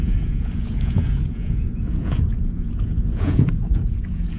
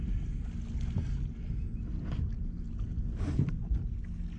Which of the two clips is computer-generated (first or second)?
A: first